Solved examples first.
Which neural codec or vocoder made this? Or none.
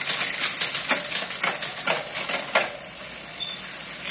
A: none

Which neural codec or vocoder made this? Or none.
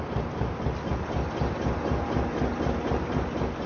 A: none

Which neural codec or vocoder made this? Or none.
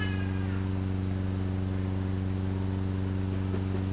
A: none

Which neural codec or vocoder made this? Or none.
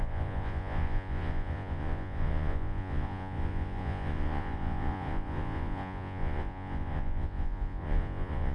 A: vocoder, Vocos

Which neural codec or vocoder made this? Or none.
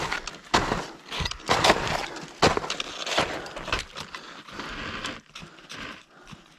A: none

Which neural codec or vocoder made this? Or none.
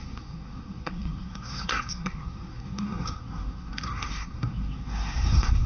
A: codec, SNAC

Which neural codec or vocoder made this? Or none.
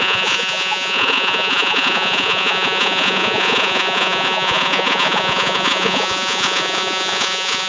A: vocoder, Vocos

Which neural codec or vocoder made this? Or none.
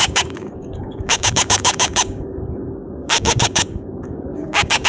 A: codec, DAC